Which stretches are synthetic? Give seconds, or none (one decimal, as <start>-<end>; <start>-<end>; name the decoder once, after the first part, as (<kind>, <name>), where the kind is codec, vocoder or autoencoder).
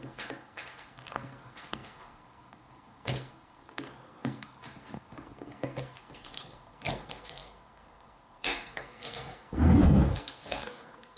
0.0-11.2 (codec, SNAC)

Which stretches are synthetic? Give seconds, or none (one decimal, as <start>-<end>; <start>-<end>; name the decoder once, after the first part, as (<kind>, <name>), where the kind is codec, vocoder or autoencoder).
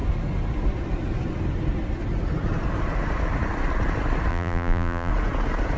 4.3-5.1 (vocoder, BigVGAN v2)